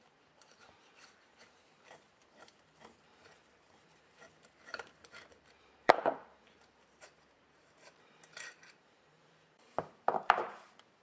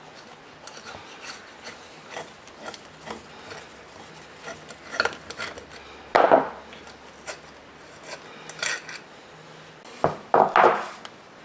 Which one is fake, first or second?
first